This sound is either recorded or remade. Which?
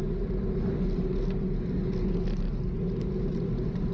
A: recorded